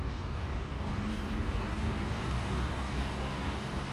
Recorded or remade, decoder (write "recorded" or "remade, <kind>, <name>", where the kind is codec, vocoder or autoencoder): remade, codec, DAC